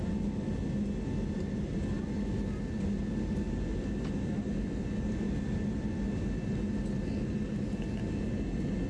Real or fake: real